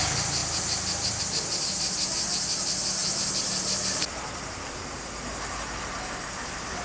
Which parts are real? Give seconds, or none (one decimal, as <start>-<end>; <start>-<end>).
0.0-6.8

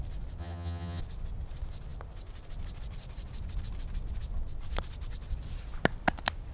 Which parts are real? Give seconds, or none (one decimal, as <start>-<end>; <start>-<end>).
0.0-0.4; 1.0-6.5